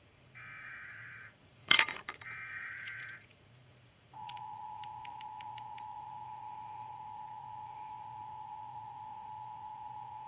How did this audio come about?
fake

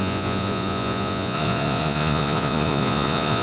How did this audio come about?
fake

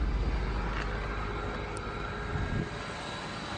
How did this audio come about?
real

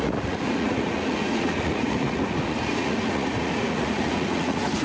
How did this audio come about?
fake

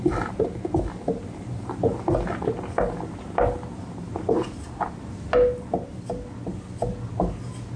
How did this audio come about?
real